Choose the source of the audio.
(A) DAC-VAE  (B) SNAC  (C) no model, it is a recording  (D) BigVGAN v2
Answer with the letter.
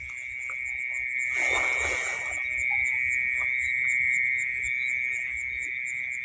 C